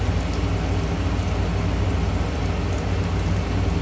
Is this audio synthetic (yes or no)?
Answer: no